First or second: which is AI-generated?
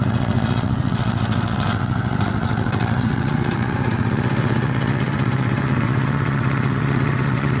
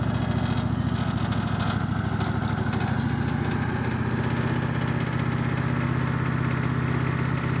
first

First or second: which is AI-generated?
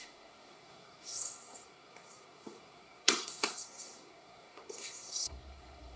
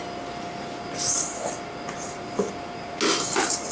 first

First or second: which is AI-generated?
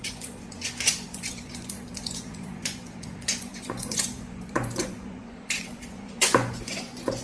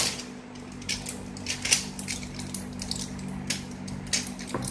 first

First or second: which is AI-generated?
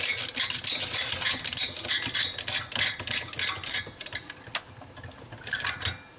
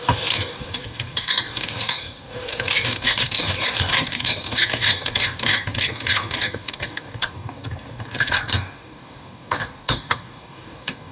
second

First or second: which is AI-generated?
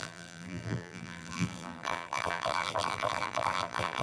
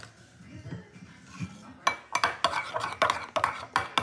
first